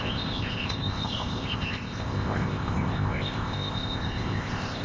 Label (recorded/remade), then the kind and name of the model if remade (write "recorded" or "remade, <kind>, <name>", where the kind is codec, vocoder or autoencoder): remade, codec, ZipCodec